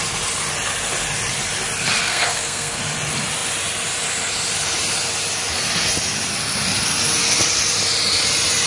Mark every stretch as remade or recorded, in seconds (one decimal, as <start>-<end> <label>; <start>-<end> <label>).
0.0-2.0 recorded; 2.0-2.8 remade; 2.8-8.7 recorded